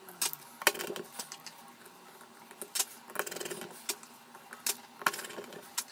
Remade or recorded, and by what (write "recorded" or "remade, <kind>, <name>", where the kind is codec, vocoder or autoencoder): recorded